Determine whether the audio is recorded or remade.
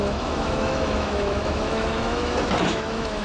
remade